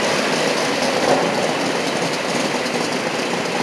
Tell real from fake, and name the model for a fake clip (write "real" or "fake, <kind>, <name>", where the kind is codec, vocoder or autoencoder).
real